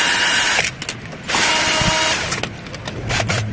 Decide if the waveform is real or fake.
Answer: real